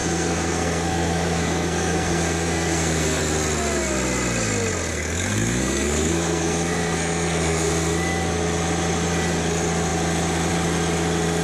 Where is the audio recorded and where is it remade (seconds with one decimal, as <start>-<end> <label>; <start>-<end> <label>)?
0.0-3.2 remade; 3.2-4.9 recorded; 4.9-7.7 remade; 7.7-11.4 recorded